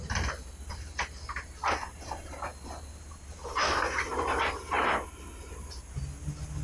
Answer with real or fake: real